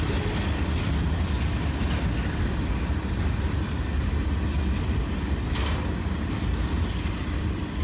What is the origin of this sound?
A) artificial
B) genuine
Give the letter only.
B